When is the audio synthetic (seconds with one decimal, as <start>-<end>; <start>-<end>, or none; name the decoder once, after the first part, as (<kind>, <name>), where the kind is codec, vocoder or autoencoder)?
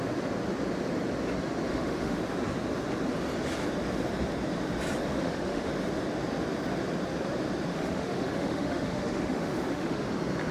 1.7-2.2 (autoencoder, DAC-VAE); 5.1-5.7; 7.7-10.1